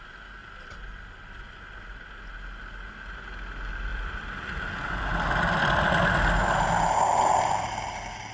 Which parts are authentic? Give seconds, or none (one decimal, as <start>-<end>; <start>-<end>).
0.0-0.4; 1.6-3.9; 5.9-8.3